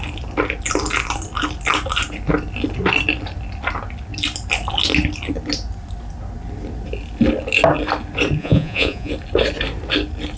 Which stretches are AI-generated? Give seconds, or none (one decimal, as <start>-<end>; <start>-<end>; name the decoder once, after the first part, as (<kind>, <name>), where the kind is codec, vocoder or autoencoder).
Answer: 8.4-9.1 (vocoder, Vocos)